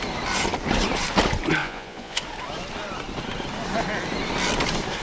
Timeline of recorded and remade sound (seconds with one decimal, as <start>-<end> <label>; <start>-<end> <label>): 0.0-1.6 recorded; 1.6-2.2 remade; 2.2-5.0 recorded